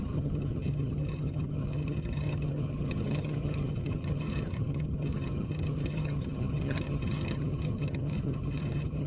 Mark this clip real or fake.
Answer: fake